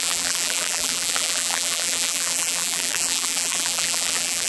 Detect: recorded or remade remade